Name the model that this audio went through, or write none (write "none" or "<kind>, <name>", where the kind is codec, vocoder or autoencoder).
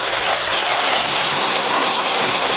codec, SNAC